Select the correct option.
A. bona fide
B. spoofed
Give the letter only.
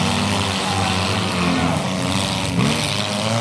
A